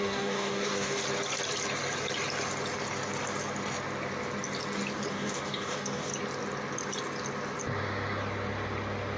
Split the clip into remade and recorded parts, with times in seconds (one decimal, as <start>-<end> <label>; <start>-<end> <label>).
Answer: 0.0-1.0 remade; 1.0-5.1 recorded; 5.1-6.1 remade; 6.1-9.2 recorded